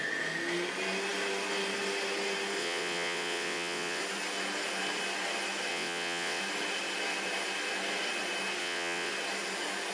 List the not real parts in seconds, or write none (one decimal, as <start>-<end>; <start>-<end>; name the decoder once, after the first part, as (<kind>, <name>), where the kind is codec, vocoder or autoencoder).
2.6-4.0 (vocoder, WaveNeXt); 5.7-6.4; 8.6-9.1